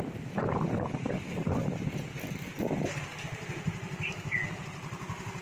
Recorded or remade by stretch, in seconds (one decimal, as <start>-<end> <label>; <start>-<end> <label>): 0.0-3.1 recorded; 3.1-5.4 remade